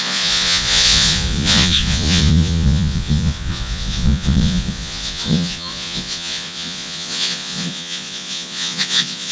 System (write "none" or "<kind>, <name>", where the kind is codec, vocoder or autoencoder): vocoder, Vocos